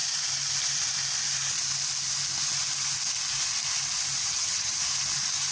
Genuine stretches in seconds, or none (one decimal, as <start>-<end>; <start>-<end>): 0.0-4.2; 4.7-5.5